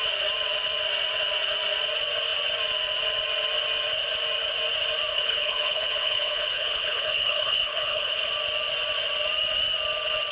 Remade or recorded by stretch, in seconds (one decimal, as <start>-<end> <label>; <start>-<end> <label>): 0.0-5.1 recorded; 5.1-8.3 remade; 8.3-10.3 recorded